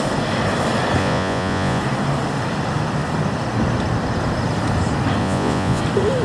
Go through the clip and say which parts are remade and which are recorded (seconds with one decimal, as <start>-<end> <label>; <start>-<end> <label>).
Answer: 0.0-1.0 recorded; 1.0-1.8 remade; 1.8-5.2 recorded; 5.2-5.8 remade; 5.8-6.2 recorded